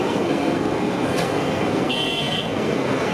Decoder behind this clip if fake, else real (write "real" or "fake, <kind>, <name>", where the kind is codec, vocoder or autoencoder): fake, codec, SNAC